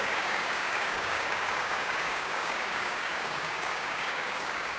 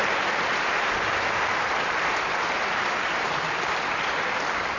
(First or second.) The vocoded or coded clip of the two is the first